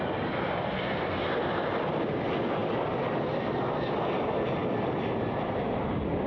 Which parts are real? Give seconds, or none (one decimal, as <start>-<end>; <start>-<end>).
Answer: 0.0-6.3